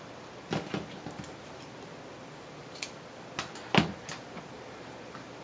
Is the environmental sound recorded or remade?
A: recorded